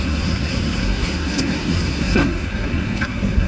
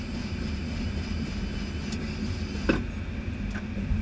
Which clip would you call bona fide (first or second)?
second